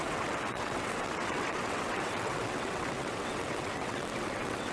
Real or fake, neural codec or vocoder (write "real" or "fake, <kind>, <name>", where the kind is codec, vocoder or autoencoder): fake, vocoder, WaveNeXt